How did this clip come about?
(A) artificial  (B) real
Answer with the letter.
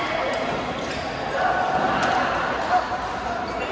B